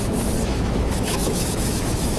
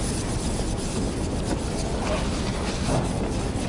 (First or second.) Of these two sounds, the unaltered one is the second